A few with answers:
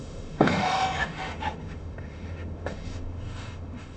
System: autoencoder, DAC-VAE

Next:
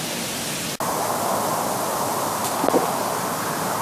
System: none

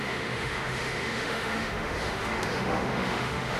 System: autoencoder, DAC-VAE